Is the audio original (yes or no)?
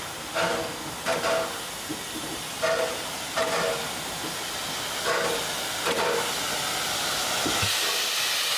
yes